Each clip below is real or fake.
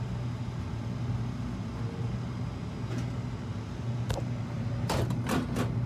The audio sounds real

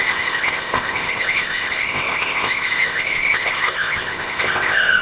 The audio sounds fake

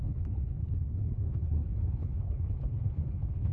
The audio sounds fake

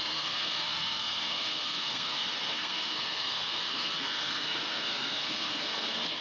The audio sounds fake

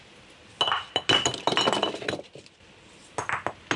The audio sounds real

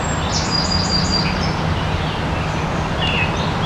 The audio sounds real